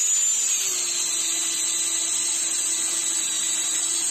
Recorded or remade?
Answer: recorded